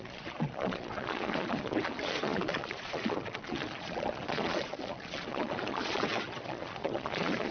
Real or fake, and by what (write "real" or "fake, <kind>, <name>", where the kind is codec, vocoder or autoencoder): fake, vocoder, Vocos